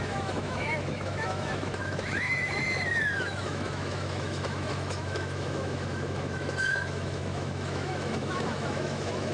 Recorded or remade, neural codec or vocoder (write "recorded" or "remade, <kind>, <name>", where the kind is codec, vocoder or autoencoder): remade, autoencoder, DAC-VAE